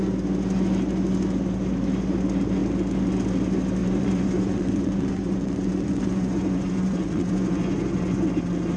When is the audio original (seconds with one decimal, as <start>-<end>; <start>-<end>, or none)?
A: 0.0-3.8; 8.3-8.8